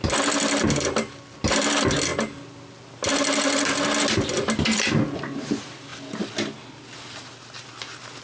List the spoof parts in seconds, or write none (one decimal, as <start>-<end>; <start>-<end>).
none